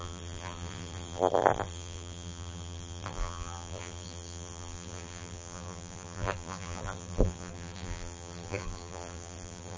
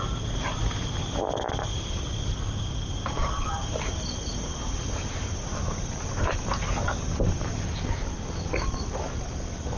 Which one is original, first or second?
second